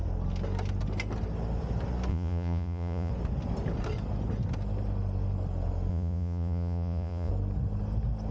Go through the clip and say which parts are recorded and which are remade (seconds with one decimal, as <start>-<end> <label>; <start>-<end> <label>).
0.0-2.1 recorded; 2.1-3.1 remade; 3.1-5.9 recorded; 5.9-7.3 remade; 7.3-8.3 recorded